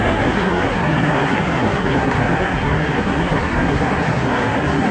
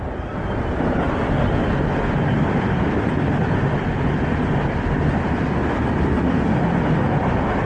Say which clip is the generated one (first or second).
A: first